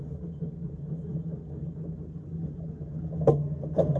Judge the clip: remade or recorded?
recorded